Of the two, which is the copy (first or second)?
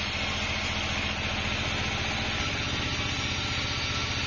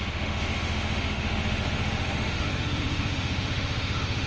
second